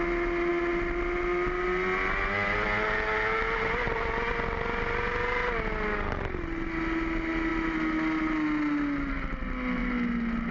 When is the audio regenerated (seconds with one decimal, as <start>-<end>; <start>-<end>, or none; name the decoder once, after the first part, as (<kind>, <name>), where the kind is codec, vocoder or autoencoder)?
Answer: none